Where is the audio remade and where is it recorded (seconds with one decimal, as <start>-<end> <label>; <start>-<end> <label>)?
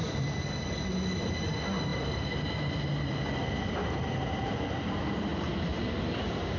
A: 0.0-0.5 remade; 0.5-1.9 recorded; 1.9-2.5 remade; 2.5-6.6 recorded